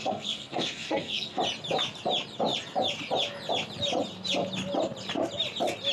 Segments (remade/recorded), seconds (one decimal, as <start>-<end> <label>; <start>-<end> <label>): 0.0-1.4 remade; 1.4-5.9 recorded